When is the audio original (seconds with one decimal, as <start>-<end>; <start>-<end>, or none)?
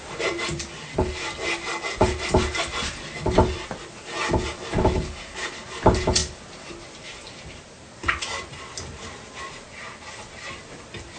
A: 0.0-6.2; 9.1-11.2